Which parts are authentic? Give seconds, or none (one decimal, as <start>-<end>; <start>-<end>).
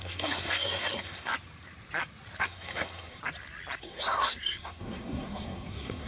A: 1.3-2.4; 3.2-3.8